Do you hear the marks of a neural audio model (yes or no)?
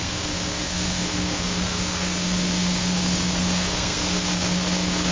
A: yes